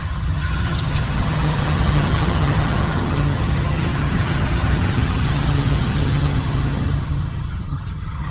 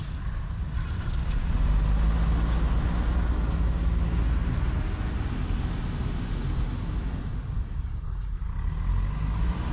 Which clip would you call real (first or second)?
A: second